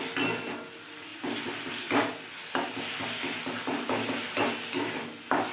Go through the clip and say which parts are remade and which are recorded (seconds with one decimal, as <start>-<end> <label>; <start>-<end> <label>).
0.0-5.5 recorded